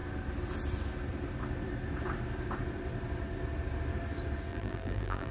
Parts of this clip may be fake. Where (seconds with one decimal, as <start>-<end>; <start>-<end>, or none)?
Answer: 4.5-5.3

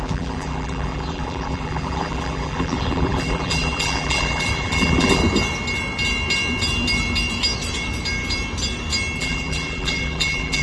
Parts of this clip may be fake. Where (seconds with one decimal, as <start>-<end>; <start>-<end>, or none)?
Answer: 0.0-5.2; 9.2-10.6

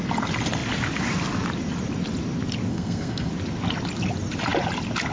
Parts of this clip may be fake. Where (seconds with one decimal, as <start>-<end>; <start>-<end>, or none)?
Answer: 2.7-3.3

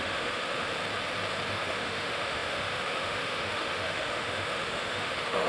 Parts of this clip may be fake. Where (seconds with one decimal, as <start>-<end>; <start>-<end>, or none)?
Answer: 0.0-0.7; 1.5-5.5

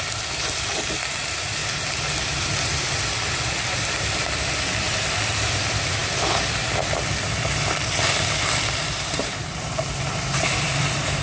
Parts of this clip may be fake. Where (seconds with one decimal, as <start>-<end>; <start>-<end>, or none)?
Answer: 0.0-1.6; 4.1-11.2

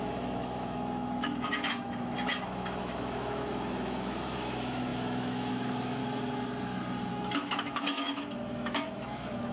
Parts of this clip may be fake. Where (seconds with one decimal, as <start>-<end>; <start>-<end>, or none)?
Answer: 0.0-6.0; 7.1-9.5